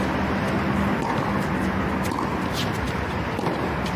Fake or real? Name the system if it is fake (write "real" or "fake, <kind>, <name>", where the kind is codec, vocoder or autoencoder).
real